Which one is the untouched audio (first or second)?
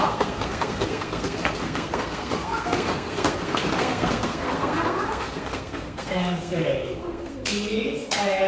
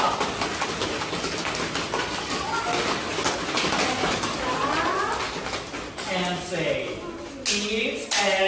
second